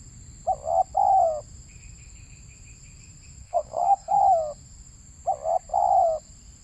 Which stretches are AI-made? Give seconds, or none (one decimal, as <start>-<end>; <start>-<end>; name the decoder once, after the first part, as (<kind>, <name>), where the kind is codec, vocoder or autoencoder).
3.4-4.2 (codec, SNAC)